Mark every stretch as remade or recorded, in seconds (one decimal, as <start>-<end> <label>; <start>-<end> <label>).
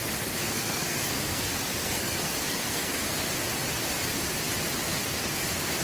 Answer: 0.0-0.4 recorded; 0.4-3.3 remade; 3.3-4.9 recorded; 4.9-5.8 remade